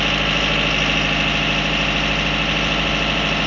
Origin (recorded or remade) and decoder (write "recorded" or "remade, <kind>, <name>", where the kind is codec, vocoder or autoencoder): recorded